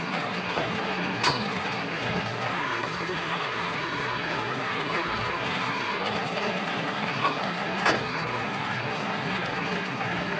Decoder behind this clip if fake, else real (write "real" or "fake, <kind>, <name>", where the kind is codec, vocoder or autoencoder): fake, codec, SNAC